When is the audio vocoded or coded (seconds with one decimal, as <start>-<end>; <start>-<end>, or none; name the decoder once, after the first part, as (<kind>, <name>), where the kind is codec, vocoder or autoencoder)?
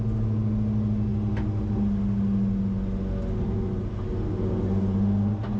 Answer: none